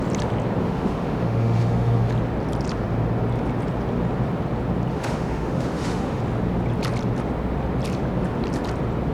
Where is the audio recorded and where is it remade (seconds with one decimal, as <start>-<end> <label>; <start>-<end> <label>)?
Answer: 0.0-0.6 recorded; 0.6-2.1 remade; 2.1-4.9 recorded; 4.9-6.2 remade; 6.2-9.1 recorded